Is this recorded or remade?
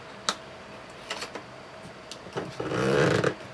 recorded